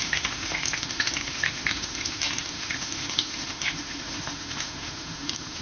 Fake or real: fake